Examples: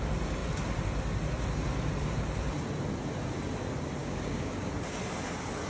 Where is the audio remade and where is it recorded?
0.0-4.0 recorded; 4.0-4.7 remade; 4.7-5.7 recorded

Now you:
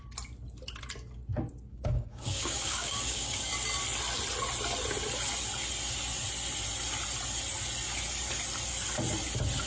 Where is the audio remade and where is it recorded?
0.0-1.7 recorded; 1.7-3.5 remade; 3.5-9.7 recorded

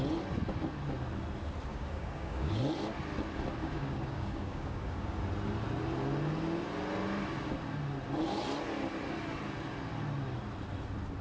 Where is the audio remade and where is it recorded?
0.0-1.7 recorded; 1.7-2.5 remade; 2.5-3.6 recorded; 3.6-5.2 remade; 5.2-11.2 recorded

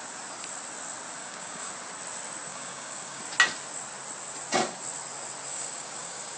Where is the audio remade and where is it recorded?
0.0-1.2 recorded; 1.2-1.7 remade; 1.7-2.5 recorded; 2.5-3.2 remade; 3.2-5.5 recorded; 5.5-6.4 remade

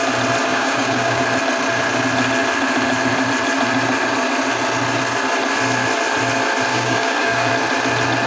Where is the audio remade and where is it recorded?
0.0-0.5 recorded; 0.5-1.2 remade; 1.2-6.7 recorded; 6.7-7.5 remade; 7.5-8.3 recorded

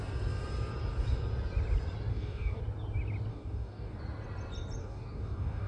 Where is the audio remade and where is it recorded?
0.0-2.1 recorded; 2.1-2.6 remade; 2.6-3.3 recorded; 3.3-4.0 remade; 4.0-4.8 recorded; 4.8-5.7 remade

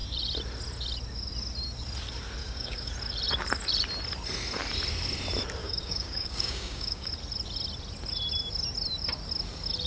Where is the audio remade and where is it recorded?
0.0-2.4 recorded; 2.4-2.9 remade; 2.9-5.6 recorded; 5.6-7.1 remade; 7.1-9.9 recorded